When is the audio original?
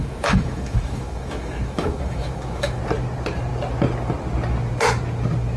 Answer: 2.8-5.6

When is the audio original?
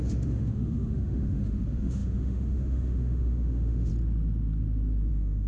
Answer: 3.9-5.1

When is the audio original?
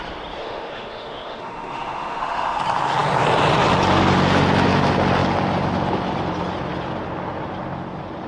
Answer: 0.0-0.4; 2.6-8.3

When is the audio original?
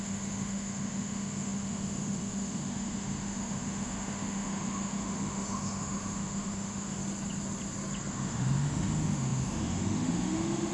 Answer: 7.0-8.1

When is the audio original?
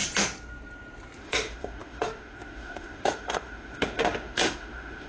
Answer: 0.0-1.2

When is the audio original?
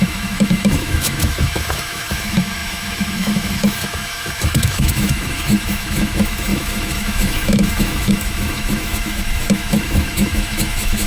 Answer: none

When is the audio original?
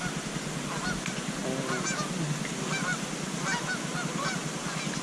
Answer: 0.0-5.0